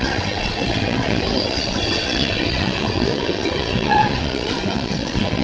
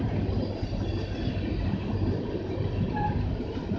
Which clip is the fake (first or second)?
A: first